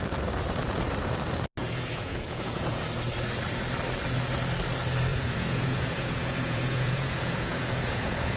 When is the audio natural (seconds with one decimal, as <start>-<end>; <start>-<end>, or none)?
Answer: 0.0-1.6; 2.8-5.1